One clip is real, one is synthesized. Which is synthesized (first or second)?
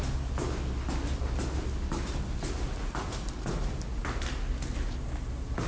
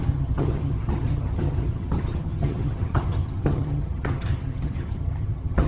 second